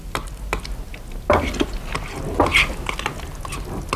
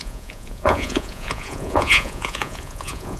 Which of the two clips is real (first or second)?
first